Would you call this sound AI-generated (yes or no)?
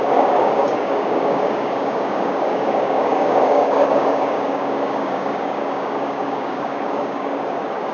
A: yes